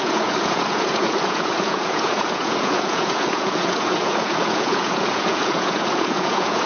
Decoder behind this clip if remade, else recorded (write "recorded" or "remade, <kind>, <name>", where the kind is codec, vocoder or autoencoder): remade, vocoder, Vocos